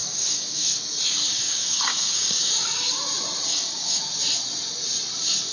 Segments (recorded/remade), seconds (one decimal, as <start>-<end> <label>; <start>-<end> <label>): 0.0-0.8 remade; 0.8-1.3 recorded; 1.3-2.5 remade; 2.5-3.5 recorded; 3.5-4.0 remade; 4.0-5.5 recorded